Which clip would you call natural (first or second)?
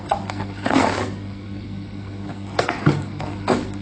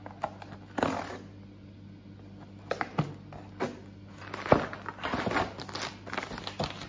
second